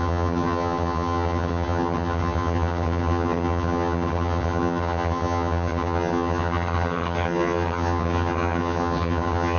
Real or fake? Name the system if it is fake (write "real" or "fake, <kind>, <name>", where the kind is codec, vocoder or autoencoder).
fake, vocoder, HiFi-GAN